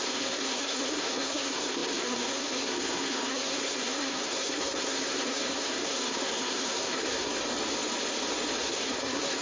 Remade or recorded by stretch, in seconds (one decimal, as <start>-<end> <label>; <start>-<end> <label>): 0.0-7.3 remade; 7.3-8.6 recorded; 8.6-9.4 remade